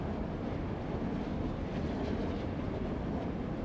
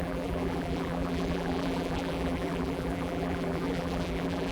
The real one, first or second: first